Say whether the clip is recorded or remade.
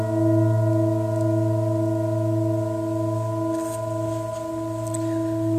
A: recorded